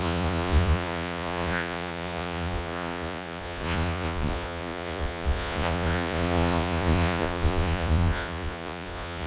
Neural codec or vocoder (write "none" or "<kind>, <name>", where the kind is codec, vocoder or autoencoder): vocoder, Vocos